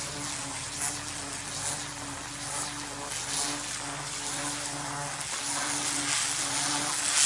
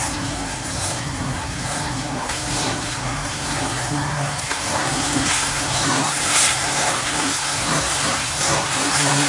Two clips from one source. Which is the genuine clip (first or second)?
first